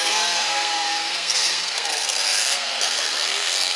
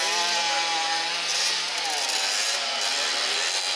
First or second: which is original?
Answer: second